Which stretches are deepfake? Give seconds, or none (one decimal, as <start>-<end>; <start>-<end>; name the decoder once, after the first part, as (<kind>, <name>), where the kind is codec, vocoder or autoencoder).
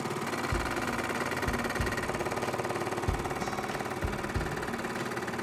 none